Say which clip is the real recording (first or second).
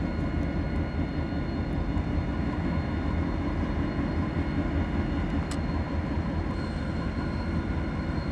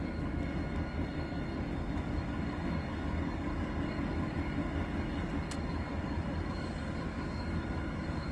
first